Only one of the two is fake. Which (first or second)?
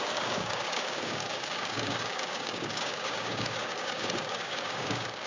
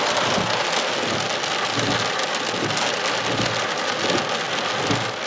first